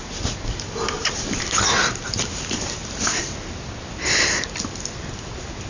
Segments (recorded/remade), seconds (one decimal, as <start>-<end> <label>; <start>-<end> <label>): 0.0-5.7 recorded